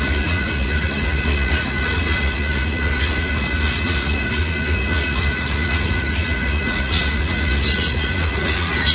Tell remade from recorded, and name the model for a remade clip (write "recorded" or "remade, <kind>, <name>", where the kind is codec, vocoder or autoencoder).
remade, vocoder, Vocos